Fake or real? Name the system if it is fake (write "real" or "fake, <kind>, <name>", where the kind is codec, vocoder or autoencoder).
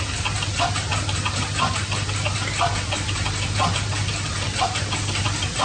real